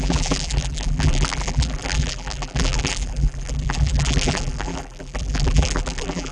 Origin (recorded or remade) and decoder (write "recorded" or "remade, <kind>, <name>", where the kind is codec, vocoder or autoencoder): remade, vocoder, BigVGAN v2